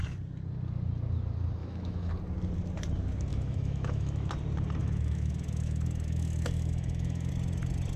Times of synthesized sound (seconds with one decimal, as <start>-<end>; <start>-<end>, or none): 1.6-2.1; 3.3-4.3; 4.8-7.3